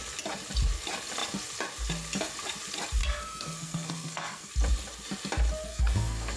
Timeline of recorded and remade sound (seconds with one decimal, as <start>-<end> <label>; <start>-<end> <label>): 0.0-3.0 recorded; 3.0-4.5 remade; 4.5-5.7 recorded; 5.7-6.4 remade